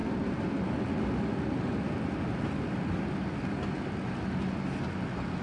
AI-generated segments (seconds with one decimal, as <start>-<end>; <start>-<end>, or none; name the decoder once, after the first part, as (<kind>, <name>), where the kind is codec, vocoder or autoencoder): none